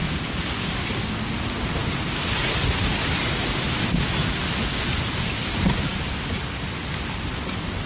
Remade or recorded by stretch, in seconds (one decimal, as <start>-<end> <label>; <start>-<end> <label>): 0.0-0.7 remade; 0.7-7.9 recorded